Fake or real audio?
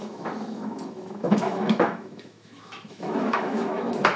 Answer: fake